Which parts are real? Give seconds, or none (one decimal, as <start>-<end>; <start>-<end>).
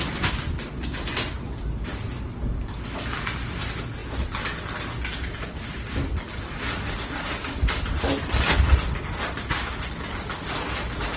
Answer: 0.0-11.2